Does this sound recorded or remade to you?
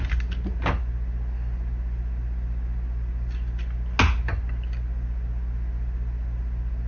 recorded